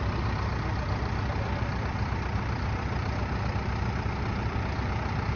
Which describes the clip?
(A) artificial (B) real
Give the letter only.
B